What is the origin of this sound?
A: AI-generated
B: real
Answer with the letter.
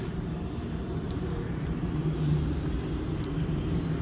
A